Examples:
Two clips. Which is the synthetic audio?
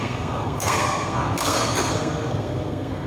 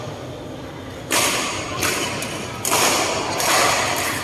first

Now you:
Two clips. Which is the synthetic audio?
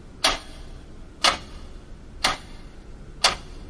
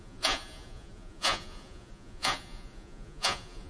second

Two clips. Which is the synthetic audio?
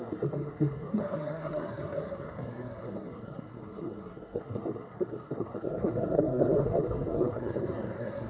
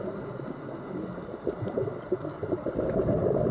first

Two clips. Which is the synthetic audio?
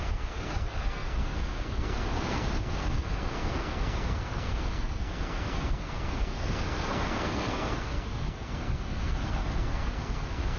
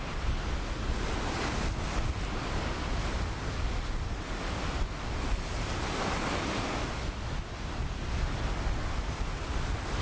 first